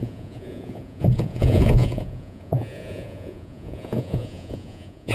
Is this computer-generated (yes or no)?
yes